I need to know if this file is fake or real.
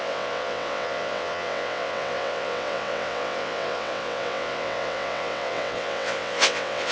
fake